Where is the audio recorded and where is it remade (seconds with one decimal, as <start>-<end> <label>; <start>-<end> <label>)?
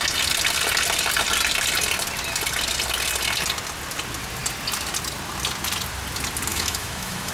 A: 0.0-6.5 recorded; 6.5-7.3 remade